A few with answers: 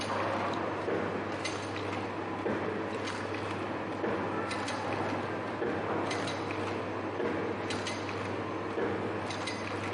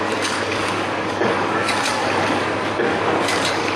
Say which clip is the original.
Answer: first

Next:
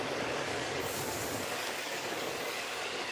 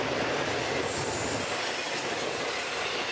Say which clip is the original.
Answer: second